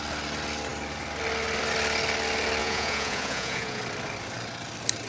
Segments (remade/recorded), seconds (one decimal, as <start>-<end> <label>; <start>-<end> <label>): 0.0-2.6 recorded; 2.6-3.8 remade; 3.8-5.1 recorded